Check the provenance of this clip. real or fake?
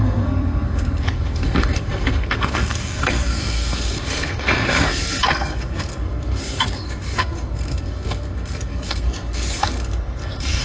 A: fake